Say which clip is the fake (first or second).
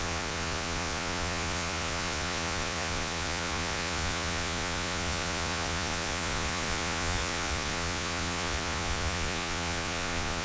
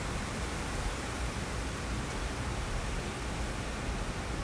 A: first